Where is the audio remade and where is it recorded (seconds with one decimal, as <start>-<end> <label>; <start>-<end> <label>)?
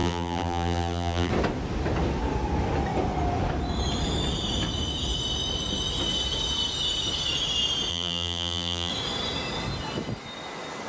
0.0-1.3 remade; 1.3-7.9 recorded; 7.9-8.9 remade; 8.9-10.9 recorded